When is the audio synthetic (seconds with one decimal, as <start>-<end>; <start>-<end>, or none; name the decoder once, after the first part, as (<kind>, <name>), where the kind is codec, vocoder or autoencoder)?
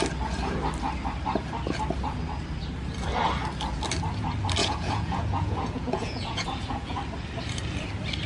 4.6-7.0 (vocoder, Vocos)